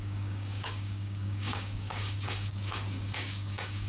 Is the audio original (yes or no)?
no